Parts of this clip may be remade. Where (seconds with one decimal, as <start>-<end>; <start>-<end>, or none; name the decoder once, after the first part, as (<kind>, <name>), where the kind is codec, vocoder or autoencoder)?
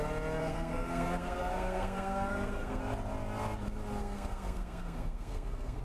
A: 0.4-2.8 (codec, SNAC); 4.0-5.8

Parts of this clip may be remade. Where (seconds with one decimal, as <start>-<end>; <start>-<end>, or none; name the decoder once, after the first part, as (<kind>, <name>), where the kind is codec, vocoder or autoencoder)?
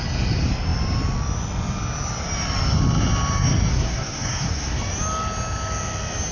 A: 3.7-4.8 (codec, SNAC)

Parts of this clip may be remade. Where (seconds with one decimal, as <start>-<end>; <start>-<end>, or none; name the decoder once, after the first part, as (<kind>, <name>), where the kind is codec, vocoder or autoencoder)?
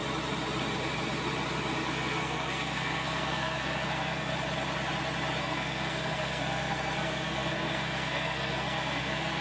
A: 1.9-4.3 (codec, SNAC); 5.4-9.4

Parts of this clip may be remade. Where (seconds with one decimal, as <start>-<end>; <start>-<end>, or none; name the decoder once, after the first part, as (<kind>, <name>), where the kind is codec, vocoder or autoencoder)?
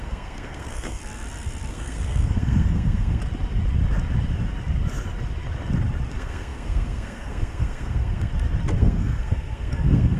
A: 0.0-1.0 (codec, SNAC); 1.7-3.2; 6.1-8.3; 8.8-10.2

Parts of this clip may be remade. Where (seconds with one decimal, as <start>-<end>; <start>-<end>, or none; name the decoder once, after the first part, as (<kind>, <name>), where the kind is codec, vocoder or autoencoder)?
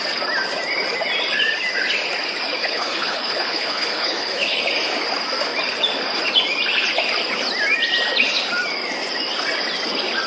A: 2.6-4.6 (codec, HILCodec)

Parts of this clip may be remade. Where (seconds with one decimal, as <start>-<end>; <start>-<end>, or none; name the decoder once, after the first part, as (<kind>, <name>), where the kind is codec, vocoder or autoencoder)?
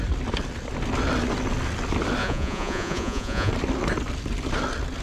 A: 2.2-3.5 (vocoder, Vocos)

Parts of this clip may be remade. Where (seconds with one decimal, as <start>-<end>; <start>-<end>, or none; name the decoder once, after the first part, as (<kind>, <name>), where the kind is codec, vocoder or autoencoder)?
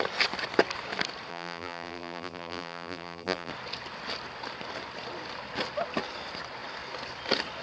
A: 1.3-3.5 (vocoder, BigVGAN v2)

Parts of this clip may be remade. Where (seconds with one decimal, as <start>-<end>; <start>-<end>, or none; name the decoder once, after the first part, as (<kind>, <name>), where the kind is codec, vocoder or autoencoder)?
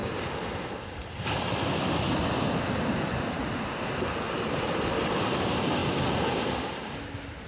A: none